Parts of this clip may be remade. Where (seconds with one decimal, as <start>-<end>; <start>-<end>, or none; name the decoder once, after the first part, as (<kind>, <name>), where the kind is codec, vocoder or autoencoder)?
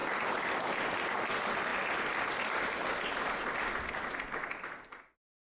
none